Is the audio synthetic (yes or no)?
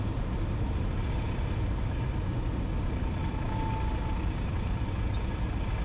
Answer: no